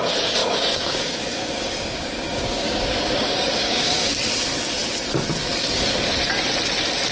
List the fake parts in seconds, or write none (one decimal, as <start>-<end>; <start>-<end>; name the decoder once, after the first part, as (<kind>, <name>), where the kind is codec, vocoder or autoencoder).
0.4-4.1 (codec, DAC)